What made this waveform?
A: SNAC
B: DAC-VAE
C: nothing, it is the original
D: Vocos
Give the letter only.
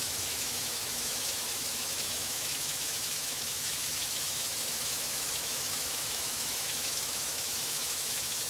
B